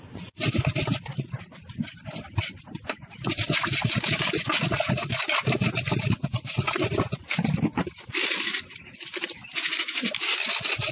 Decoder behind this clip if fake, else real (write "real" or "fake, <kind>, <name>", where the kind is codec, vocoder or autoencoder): real